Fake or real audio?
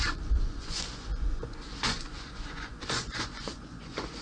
fake